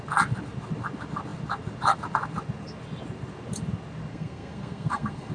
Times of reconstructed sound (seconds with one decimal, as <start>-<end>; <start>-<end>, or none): 4.1-5.3

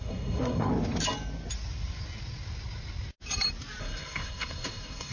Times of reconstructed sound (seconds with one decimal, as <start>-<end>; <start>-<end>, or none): 0.0-0.7; 3.8-5.1

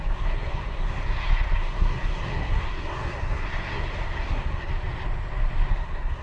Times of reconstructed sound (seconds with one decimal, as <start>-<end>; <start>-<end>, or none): 0.0-4.7; 5.7-6.2

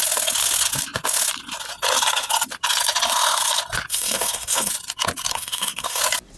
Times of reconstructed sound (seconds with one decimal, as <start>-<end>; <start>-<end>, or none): 3.9-4.7; 5.3-6.0

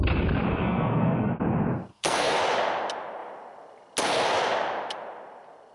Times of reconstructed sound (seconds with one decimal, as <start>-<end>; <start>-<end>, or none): 0.5-1.3; 1.9-2.4